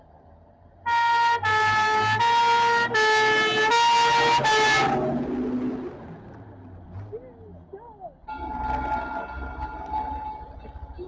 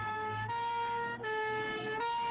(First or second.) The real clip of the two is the first